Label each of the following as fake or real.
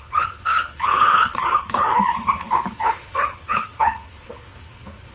fake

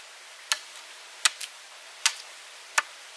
real